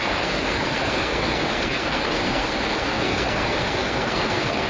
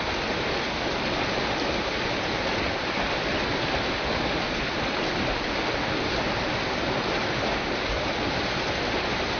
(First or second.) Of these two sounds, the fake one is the first